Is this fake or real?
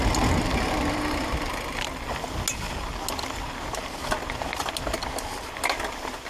real